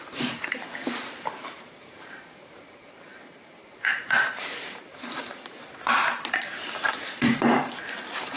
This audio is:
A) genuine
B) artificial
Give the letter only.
B